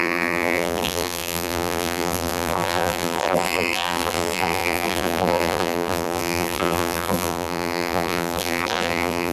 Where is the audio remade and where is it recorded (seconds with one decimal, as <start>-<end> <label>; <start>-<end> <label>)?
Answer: 0.0-9.3 remade